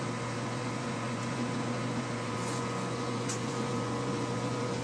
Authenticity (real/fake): fake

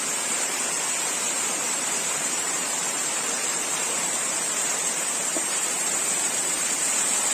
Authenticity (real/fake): fake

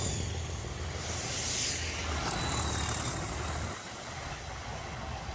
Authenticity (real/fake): real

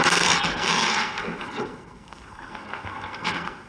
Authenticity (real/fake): fake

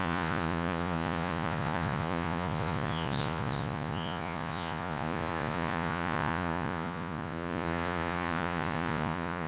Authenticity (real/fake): fake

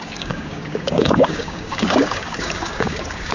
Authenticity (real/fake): fake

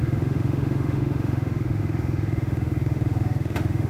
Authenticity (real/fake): fake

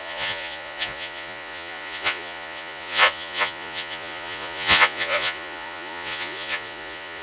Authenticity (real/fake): fake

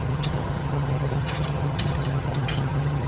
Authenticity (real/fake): fake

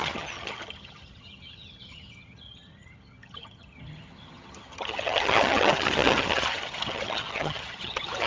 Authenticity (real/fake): fake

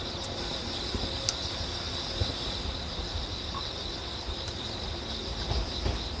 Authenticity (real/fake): real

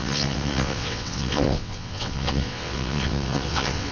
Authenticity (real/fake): fake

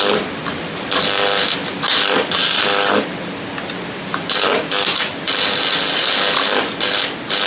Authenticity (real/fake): real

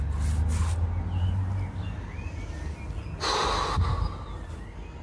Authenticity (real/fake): real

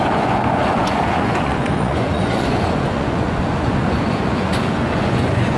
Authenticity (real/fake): fake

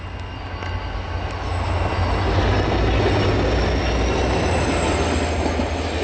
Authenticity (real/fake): real